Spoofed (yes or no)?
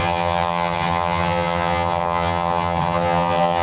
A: yes